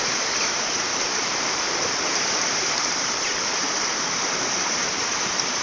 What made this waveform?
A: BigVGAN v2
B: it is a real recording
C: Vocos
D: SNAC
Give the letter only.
A